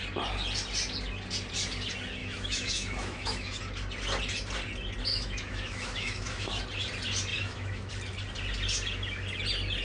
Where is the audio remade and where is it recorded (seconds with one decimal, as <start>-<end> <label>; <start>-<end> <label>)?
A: 0.0-2.2 recorded; 2.2-3.6 remade; 3.6-5.1 recorded; 5.1-6.6 remade; 6.6-7.3 recorded; 7.3-7.9 remade; 7.9-9.8 recorded